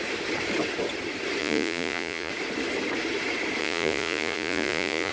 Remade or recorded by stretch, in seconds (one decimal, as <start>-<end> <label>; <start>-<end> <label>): 0.0-1.4 recorded; 1.4-2.3 remade; 2.3-3.6 recorded; 3.6-5.1 remade